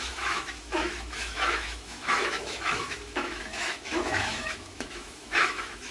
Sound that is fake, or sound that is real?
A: fake